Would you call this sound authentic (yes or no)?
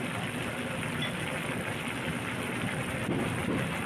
yes